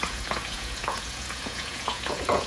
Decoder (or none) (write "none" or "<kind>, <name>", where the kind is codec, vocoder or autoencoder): vocoder, Vocos